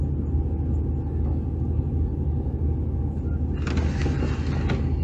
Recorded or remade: recorded